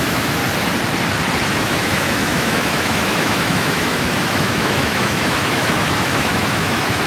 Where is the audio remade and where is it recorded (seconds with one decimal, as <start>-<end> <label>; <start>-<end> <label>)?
0.0-0.4 remade; 0.4-1.5 recorded; 1.5-7.1 remade